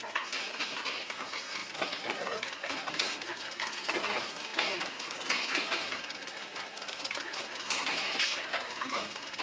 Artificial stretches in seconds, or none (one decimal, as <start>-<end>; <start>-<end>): 0.0-9.4